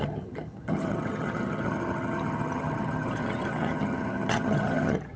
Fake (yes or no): yes